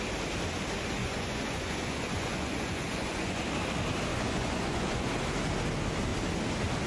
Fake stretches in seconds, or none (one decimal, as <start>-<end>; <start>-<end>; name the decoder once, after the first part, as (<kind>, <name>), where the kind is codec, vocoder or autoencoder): 1.0-3.4 (vocoder, Vocos); 4.1-5.1